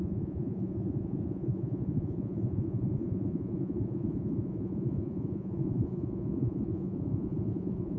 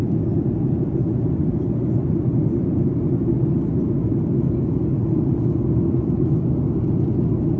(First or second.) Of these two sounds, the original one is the second